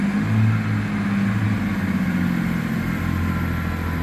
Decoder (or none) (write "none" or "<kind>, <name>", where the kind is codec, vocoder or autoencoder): none